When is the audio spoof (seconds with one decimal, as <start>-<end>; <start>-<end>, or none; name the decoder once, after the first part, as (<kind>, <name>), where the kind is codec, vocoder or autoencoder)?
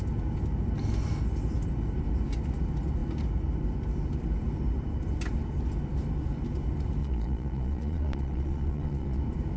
7.0-9.2 (vocoder, Vocos)